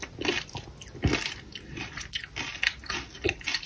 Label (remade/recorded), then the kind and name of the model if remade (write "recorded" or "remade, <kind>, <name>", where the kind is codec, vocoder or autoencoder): recorded